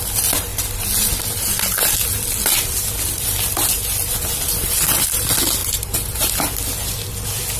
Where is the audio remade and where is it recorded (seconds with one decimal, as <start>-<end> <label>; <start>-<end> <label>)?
0.0-5.6 recorded; 5.6-6.3 remade; 6.3-7.6 recorded